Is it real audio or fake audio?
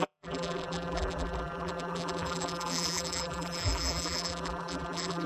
fake